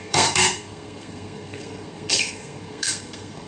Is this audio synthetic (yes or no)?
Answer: yes